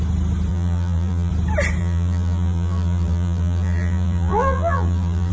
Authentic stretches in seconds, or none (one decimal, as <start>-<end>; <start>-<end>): 0.0-0.5; 1.3-1.8